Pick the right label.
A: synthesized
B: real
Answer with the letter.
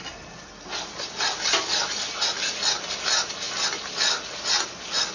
B